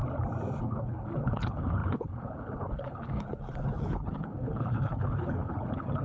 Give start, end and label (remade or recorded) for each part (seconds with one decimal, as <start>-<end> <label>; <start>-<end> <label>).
0.0-0.6 recorded; 0.6-6.0 remade